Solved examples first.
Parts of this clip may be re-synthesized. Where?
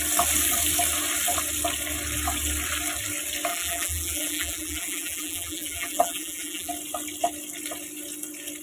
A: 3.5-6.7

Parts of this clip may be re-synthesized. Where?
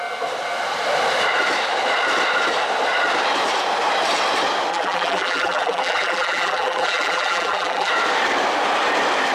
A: 4.7-7.9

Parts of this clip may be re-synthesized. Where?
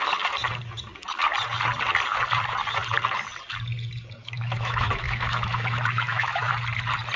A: 4.2-6.5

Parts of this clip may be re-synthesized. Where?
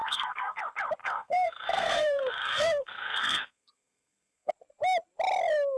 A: 0.0-0.6; 1.0-4.5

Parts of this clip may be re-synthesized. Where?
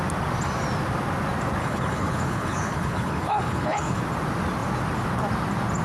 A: 1.6-4.0